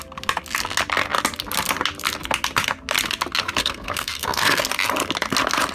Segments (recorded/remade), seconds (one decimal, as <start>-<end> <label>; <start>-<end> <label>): 0.0-3.6 recorded; 3.6-4.6 remade; 4.6-5.7 recorded